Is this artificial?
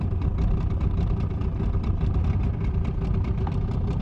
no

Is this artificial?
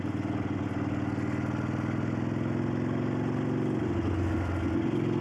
no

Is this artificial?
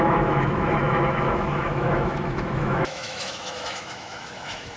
yes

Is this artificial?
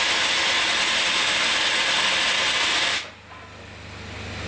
no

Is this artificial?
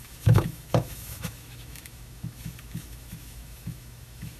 yes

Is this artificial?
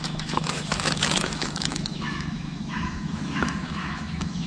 yes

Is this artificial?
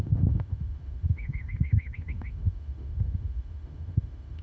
yes